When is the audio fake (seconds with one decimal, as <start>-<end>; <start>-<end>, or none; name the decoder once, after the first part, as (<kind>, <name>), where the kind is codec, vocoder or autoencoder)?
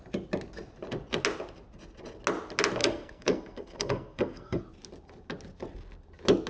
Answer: 2.8-4.6 (codec, SNAC)